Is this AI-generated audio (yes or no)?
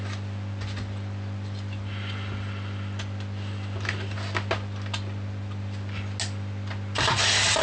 no